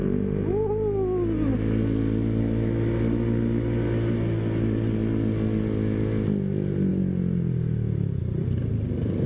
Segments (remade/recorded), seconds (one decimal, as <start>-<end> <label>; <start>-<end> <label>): 0.0-9.3 recorded

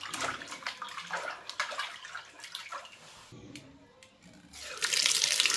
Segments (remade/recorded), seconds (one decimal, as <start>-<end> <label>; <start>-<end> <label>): 0.0-5.6 recorded